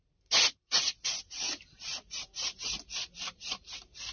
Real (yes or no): no